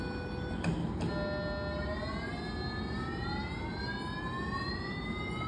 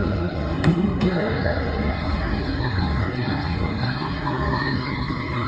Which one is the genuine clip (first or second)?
first